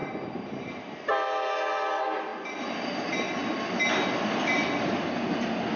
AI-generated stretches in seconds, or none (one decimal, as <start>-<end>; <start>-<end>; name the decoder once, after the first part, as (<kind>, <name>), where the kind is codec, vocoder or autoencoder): 0.0-0.7 (vocoder, BigVGAN v2)